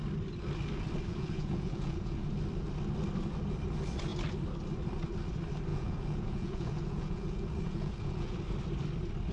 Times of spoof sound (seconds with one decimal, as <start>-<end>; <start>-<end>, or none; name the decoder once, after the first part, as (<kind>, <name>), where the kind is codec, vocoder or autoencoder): 1.1-2.3 (vocoder, Vocos); 5.7-8.4